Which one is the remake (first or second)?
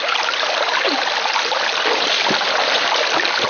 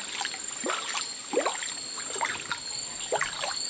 first